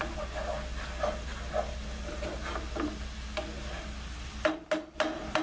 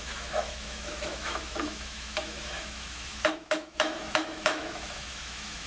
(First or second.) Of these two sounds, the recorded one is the first